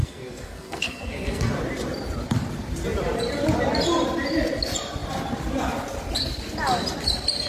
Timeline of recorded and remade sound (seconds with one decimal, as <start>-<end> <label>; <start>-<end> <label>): 0.0-1.5 remade; 1.5-7.5 recorded